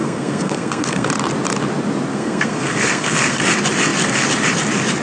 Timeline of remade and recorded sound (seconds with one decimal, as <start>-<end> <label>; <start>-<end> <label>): 0.0-1.1 remade; 1.1-2.1 recorded; 2.1-3.4 remade; 3.4-5.0 recorded